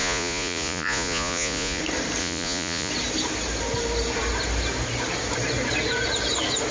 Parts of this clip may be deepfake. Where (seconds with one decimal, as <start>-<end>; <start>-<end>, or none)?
0.0-1.8; 2.2-2.9